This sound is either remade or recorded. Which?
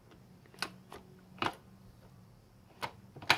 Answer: recorded